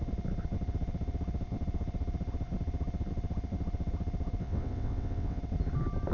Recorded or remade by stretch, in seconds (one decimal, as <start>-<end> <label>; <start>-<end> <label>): 0.0-4.4 recorded; 4.4-5.4 remade; 5.4-6.1 recorded